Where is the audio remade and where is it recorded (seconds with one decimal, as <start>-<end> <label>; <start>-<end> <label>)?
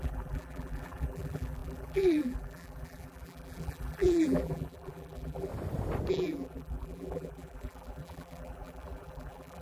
0.0-5.5 remade; 5.5-6.1 recorded; 6.1-9.6 remade